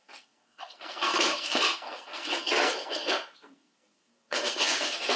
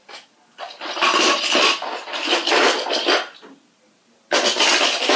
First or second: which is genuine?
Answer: second